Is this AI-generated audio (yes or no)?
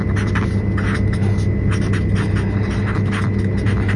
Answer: no